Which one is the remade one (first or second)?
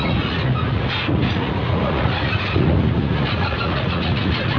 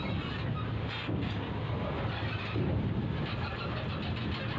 first